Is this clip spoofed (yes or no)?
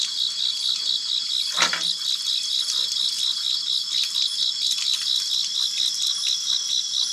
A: no